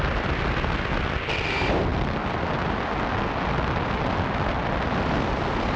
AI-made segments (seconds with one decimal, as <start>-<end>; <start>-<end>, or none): none